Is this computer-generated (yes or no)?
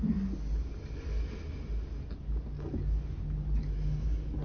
no